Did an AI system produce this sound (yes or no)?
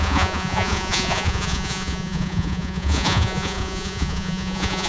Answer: yes